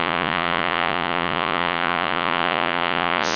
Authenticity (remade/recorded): remade